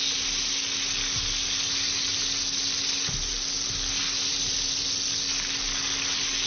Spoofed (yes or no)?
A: no